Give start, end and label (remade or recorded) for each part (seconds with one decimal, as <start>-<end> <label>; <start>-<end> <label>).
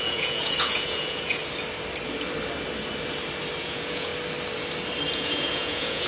0.0-1.4 remade; 1.4-3.6 recorded; 3.6-4.1 remade; 4.1-5.1 recorded; 5.1-6.1 remade